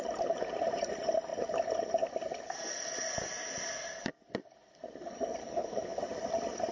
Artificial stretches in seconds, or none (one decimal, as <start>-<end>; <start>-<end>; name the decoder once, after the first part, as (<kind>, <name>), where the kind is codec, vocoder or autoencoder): 5.4-6.0 (codec, HILCodec)